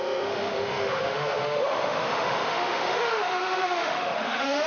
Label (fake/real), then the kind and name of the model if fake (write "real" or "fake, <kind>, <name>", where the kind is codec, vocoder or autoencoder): fake, autoencoder, DAC-VAE